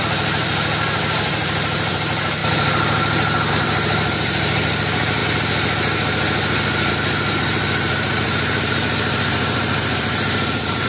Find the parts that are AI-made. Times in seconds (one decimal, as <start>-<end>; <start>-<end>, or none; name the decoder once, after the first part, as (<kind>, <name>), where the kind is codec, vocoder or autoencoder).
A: 0.0-2.4 (vocoder, BigVGAN v2); 3.5-5.2; 6.9-10.9